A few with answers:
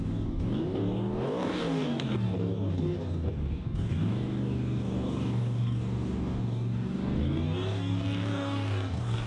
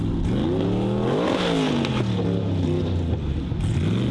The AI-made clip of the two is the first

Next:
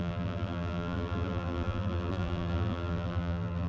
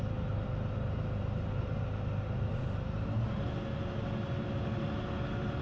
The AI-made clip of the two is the first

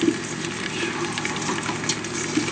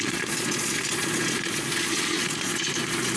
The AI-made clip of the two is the second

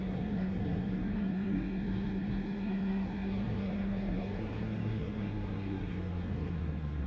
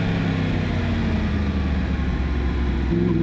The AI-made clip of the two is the first